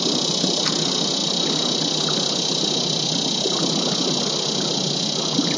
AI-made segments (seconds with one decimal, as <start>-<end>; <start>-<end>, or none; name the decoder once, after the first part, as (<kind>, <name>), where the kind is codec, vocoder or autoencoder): none